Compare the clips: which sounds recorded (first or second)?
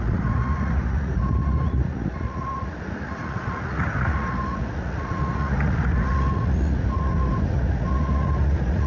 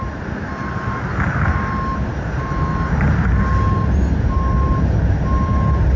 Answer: second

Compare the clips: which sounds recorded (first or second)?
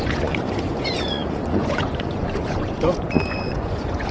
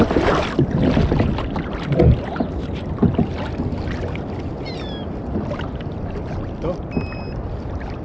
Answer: second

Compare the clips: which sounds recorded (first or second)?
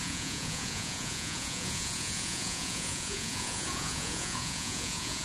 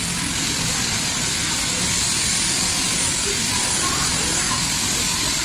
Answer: second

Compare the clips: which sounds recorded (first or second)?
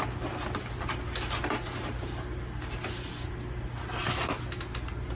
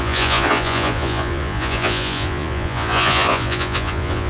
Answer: first